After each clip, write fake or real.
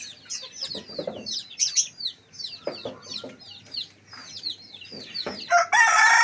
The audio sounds real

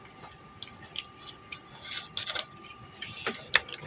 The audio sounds real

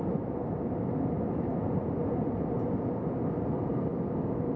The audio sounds real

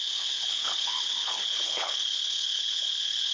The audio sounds fake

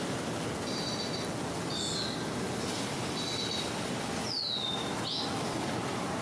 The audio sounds real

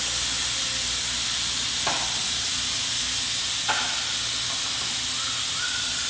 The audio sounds real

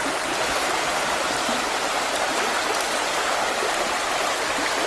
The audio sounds real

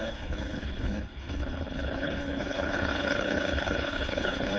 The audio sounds fake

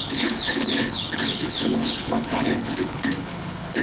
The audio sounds fake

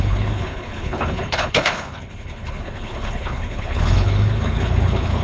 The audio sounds fake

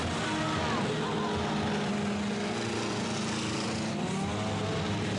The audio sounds real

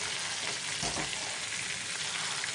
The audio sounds real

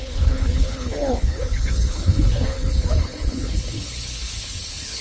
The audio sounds fake